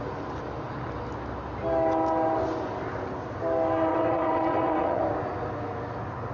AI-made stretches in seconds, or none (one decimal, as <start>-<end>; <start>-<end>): 3.9-5.0